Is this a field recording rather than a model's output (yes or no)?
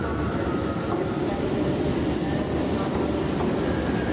yes